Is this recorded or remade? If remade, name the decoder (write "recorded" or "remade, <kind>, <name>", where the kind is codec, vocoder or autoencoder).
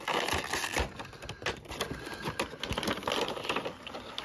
recorded